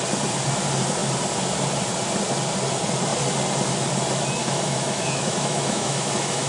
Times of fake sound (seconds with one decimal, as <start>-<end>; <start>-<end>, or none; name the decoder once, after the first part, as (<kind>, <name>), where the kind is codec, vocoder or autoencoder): 4.4-6.5 (autoencoder, DAC-VAE)